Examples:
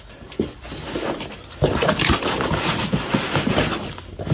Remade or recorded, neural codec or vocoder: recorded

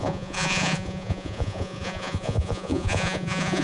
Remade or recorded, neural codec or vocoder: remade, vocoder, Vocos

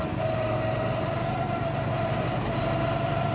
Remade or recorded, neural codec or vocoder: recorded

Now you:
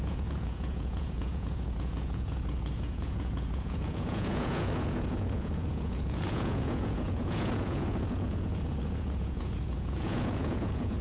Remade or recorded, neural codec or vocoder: remade, vocoder, Vocos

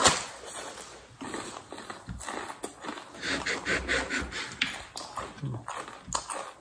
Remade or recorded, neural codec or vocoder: recorded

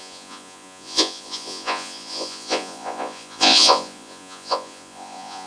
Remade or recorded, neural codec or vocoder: remade, vocoder, Vocos